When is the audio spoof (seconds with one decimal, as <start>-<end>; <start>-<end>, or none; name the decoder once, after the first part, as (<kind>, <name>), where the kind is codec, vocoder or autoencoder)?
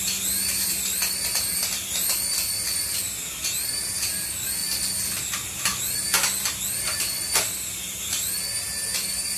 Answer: none